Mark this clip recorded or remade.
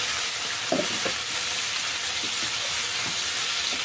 recorded